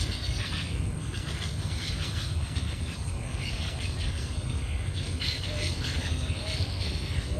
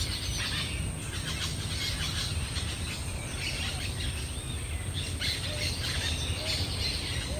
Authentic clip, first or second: second